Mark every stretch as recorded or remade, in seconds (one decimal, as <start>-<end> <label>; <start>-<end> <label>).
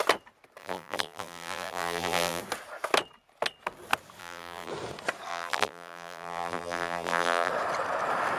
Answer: 0.0-0.6 recorded; 0.6-2.4 remade; 2.4-4.2 recorded; 4.2-4.7 remade; 4.7-5.3 recorded; 5.3-7.5 remade; 7.5-8.4 recorded